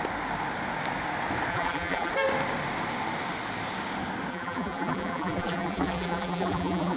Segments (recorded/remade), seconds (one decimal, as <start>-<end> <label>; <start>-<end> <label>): 0.0-1.5 recorded; 1.5-2.1 remade; 2.1-4.3 recorded; 4.3-7.0 remade